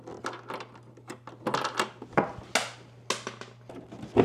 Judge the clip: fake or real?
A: real